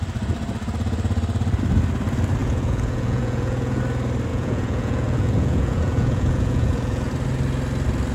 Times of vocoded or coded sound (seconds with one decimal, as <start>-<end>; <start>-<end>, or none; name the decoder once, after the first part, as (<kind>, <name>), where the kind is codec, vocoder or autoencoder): 2.4-3.8 (vocoder, Vocos); 4.3-7.1